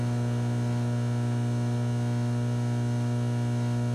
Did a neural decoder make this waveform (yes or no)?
no